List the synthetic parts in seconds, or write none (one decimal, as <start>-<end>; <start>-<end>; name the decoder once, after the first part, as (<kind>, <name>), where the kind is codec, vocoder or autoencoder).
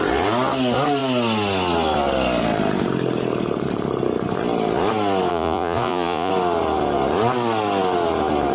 5.3-6.3 (vocoder, Vocos)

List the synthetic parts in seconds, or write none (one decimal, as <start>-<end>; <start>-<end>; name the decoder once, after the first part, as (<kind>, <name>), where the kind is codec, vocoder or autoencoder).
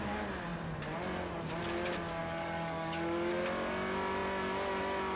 2.2-3.3 (codec, DAC)